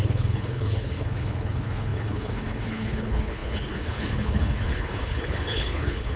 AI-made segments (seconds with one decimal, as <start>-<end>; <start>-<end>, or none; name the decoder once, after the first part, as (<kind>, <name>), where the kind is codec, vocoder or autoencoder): 0.0-6.2 (codec, HILCodec)